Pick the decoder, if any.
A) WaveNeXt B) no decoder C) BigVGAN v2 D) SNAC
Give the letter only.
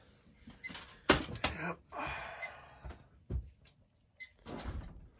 B